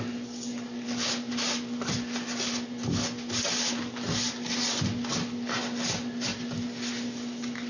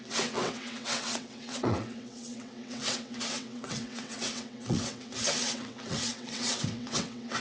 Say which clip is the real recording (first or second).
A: first